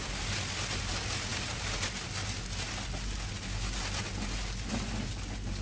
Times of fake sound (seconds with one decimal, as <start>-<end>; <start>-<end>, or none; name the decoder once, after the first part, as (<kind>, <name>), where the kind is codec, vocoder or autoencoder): none

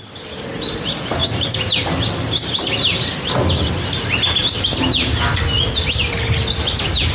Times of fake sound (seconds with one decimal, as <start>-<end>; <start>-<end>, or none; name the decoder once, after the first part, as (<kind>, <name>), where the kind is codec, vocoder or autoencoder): none

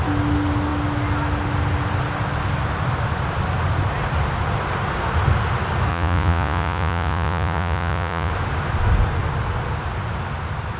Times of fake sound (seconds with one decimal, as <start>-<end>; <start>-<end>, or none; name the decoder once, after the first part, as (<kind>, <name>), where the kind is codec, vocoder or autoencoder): 5.9-8.3 (vocoder, Vocos)

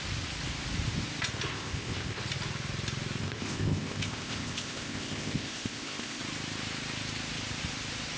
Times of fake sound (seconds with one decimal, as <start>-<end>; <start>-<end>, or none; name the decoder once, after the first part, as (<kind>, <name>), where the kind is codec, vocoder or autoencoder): 1.5-2.2 (codec, ZipCodec); 3.2-6.2

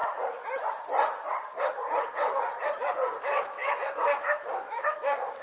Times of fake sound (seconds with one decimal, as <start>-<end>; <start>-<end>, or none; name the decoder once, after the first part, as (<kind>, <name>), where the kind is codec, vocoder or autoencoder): 3.2-5.4 (autoencoder, DAC-VAE)

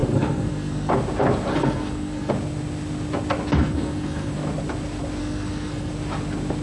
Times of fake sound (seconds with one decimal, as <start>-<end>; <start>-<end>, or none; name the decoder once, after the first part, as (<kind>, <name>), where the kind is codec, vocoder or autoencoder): 0.0-0.9 (codec, SNAC); 1.5-2.3; 3.6-4.3; 5.2-5.9

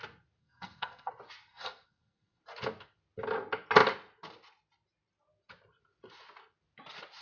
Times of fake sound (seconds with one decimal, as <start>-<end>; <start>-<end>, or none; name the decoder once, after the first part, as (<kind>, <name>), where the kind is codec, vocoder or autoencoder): 0.4-1.1 (codec, SNAC); 1.5-2.4